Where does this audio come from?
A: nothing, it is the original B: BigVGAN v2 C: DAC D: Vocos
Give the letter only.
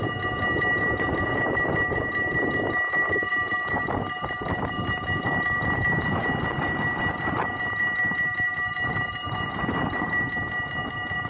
A